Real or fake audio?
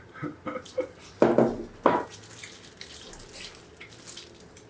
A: real